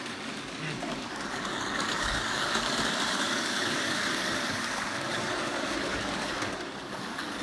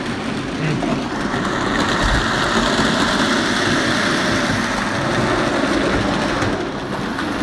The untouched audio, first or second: second